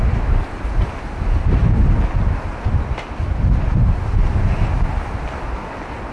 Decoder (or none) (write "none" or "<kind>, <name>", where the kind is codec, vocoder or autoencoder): none